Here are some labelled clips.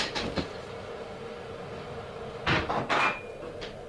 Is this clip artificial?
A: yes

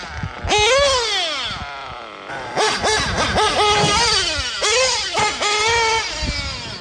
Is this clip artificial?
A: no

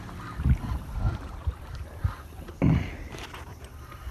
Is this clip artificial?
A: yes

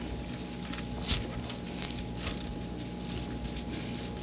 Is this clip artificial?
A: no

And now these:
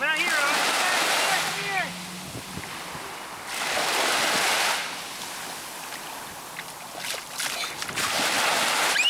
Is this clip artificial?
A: no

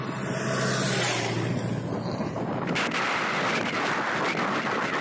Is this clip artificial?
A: no